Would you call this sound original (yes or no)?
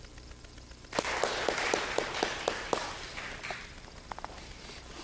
yes